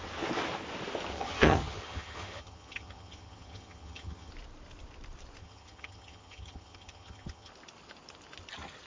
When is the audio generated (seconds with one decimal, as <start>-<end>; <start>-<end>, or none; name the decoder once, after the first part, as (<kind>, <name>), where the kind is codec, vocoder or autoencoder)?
1.1-4.3 (vocoder, HiFi-GAN); 5.4-7.5